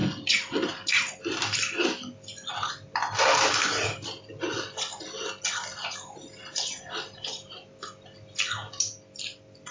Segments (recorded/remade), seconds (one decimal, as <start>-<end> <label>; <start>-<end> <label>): 0.0-9.7 recorded